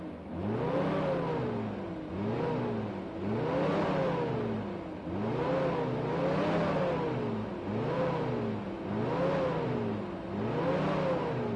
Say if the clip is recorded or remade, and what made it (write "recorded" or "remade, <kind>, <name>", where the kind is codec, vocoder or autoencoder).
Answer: recorded